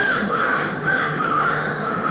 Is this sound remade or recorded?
remade